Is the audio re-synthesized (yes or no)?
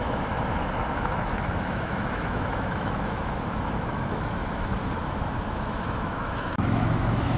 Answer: yes